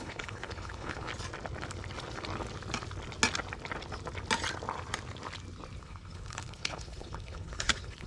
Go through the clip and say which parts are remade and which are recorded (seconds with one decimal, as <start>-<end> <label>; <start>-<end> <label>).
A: 0.0-1.1 remade; 1.1-5.8 recorded; 5.8-8.1 remade